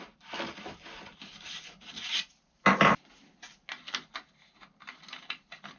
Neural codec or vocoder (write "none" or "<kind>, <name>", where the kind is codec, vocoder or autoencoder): none